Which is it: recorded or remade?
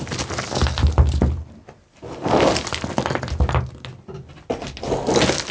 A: recorded